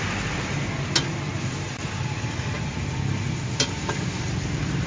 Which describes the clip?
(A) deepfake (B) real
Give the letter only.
B